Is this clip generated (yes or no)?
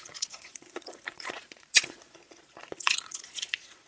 yes